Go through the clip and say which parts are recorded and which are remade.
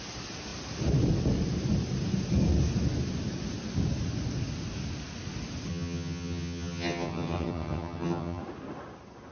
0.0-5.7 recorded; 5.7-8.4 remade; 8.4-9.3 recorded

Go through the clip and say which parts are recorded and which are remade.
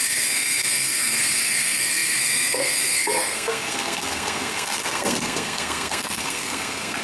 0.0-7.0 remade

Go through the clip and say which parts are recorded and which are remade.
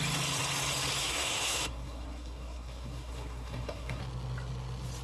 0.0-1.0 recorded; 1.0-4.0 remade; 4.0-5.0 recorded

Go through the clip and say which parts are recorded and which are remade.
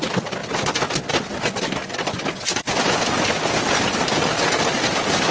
0.0-0.4 remade; 0.4-1.1 recorded; 1.1-5.3 remade